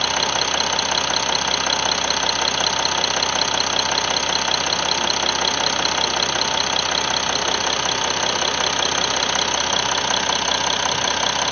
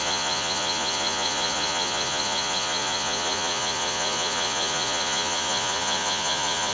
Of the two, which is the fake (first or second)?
second